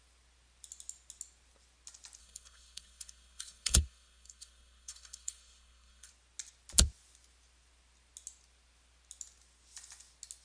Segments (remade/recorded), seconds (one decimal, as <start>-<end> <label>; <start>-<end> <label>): 0.0-2.2 recorded; 2.2-6.1 remade; 6.1-10.4 recorded

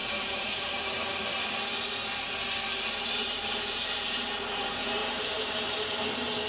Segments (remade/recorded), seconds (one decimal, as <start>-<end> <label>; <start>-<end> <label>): 0.0-0.9 remade; 0.9-3.2 recorded; 3.2-3.8 remade; 3.8-5.0 recorded; 5.0-5.5 remade; 5.5-6.5 recorded

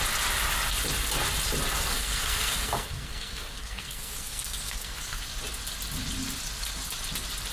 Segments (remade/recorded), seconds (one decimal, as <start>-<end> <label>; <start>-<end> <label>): 0.0-1.9 recorded; 1.9-5.2 remade; 5.2-7.5 recorded

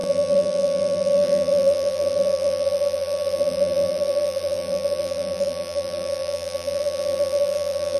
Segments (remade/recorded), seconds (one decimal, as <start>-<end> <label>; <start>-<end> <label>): 0.0-8.0 remade

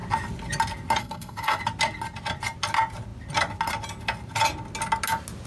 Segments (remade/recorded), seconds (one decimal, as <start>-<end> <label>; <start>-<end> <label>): 0.0-1.0 recorded; 1.0-1.6 remade; 1.6-5.5 recorded

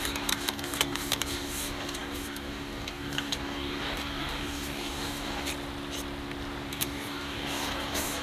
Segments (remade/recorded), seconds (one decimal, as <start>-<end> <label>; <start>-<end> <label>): 0.0-5.5 remade; 5.5-6.7 recorded; 6.7-8.2 remade

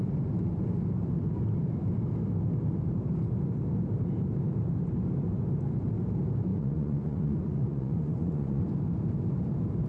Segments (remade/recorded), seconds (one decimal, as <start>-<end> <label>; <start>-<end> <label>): 0.0-6.5 recorded; 6.5-8.6 remade; 8.6-9.9 recorded